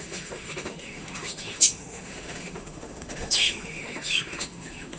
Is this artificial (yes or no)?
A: yes